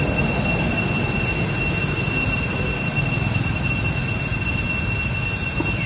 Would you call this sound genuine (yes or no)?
yes